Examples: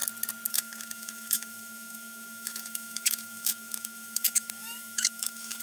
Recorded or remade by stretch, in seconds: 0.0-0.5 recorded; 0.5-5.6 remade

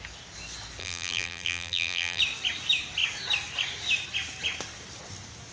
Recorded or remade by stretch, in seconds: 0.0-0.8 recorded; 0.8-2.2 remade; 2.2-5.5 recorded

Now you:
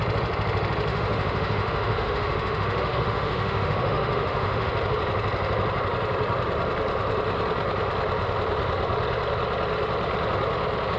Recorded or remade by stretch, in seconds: 0.0-0.9 recorded; 0.9-4.7 remade; 4.7-11.0 recorded

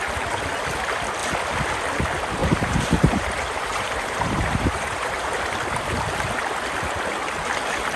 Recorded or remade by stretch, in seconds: 0.0-2.4 recorded; 2.4-5.3 remade; 5.3-8.0 recorded

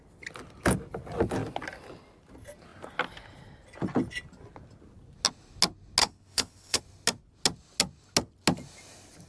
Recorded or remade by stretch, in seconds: 0.0-6.0 recorded; 6.0-6.8 remade; 6.8-9.3 recorded

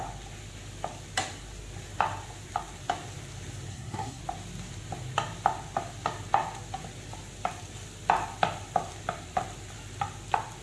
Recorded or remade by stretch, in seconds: 0.0-3.7 recorded; 3.7-4.2 remade; 4.2-10.6 recorded